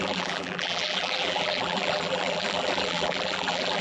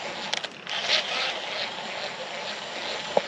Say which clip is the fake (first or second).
first